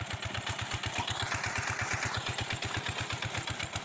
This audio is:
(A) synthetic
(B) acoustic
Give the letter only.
B